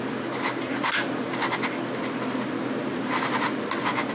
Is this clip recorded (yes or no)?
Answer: yes